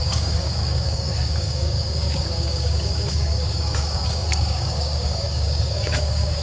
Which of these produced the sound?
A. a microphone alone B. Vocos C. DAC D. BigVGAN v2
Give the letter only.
C